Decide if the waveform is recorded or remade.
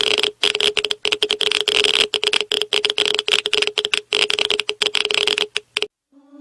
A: recorded